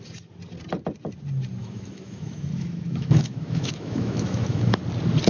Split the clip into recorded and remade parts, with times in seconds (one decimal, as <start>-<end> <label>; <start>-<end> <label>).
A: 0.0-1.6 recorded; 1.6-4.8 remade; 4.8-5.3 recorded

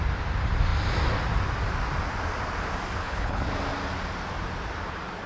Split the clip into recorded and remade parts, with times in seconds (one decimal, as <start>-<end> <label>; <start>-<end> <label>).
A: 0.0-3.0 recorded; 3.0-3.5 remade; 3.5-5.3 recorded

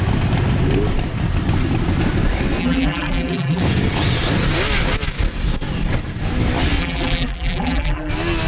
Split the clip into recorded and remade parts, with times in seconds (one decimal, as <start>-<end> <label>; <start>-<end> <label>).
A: 0.0-2.6 recorded; 2.6-3.6 remade; 3.6-6.8 recorded; 6.8-8.1 remade; 8.1-8.5 recorded